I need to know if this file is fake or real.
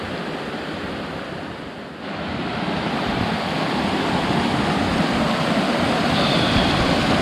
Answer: real